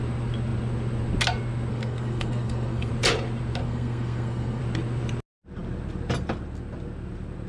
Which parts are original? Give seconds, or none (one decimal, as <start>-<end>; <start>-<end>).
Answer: 0.0-1.7; 2.9-3.6; 4.6-7.5